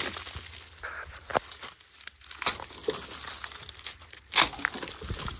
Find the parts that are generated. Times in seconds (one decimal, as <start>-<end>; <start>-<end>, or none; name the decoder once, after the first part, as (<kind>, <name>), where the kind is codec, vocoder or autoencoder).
none